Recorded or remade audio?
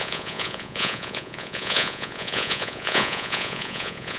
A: remade